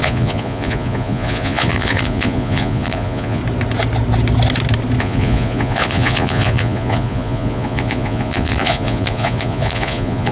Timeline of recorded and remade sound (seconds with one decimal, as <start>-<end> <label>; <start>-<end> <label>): 0.0-3.4 remade; 3.4-5.0 recorded; 5.0-10.3 remade